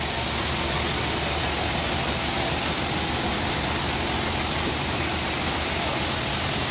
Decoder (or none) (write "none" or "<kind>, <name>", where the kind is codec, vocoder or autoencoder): none